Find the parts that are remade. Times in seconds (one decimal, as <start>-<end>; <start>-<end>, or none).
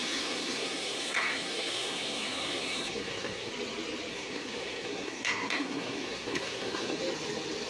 0.0-3.5; 4.1-7.0